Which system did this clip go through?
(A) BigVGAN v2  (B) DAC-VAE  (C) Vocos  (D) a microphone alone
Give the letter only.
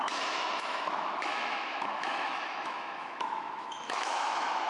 B